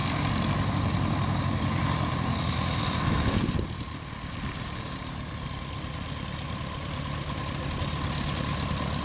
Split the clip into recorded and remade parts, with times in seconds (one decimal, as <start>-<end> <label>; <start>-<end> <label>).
0.0-4.8 remade; 4.8-9.0 recorded